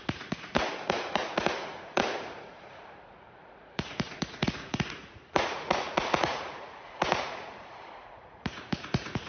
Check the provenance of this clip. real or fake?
fake